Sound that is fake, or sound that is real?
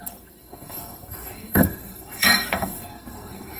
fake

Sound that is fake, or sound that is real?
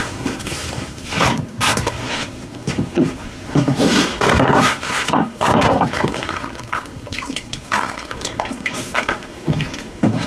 fake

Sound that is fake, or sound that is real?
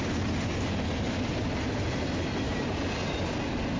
real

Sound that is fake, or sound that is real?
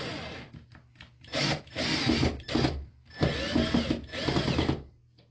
real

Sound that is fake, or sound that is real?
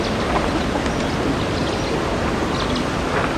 real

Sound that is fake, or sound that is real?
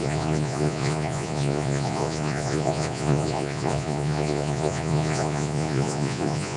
fake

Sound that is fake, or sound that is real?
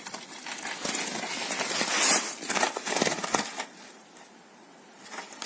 real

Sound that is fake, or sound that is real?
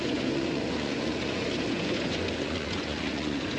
fake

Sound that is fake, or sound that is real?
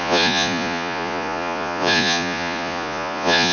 fake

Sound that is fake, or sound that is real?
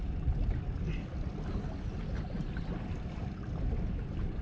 real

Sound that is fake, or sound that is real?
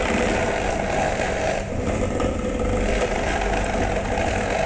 fake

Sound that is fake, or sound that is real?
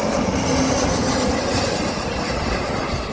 real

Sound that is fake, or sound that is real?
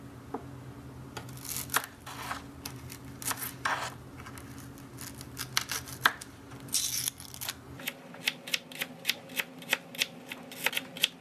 real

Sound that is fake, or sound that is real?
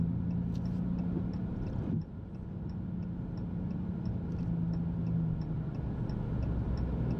real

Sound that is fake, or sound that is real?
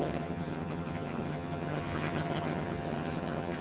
fake